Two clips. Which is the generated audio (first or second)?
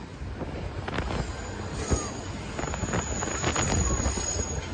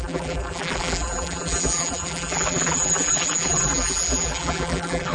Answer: second